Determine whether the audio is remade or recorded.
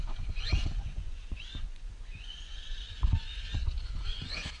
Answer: remade